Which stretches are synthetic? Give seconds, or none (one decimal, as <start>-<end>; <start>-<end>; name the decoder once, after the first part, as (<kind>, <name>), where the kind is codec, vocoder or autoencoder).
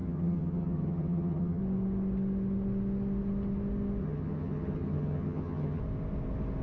0.0-1.6 (vocoder, HiFi-GAN); 4.0-5.8